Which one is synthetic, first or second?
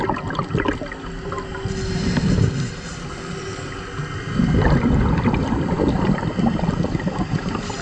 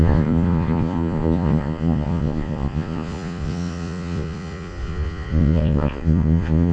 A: second